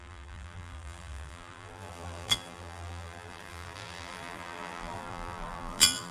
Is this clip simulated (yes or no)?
yes